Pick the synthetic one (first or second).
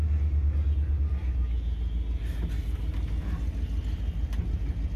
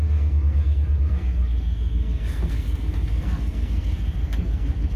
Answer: second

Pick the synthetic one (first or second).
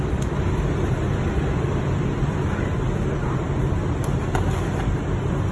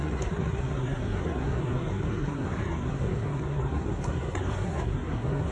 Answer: second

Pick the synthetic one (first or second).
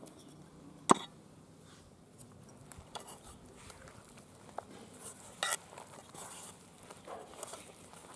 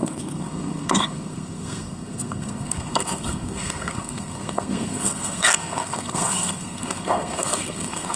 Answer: second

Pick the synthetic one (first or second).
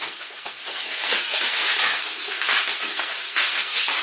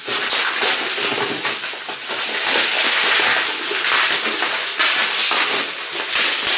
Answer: first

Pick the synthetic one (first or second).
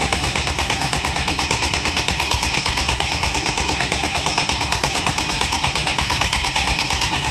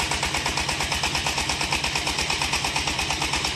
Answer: first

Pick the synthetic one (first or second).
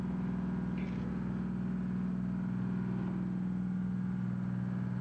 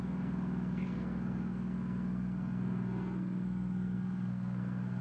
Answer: second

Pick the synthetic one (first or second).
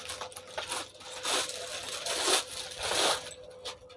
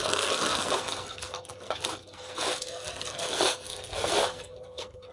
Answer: second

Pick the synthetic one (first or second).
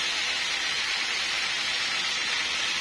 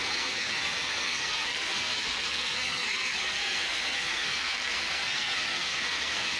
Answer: second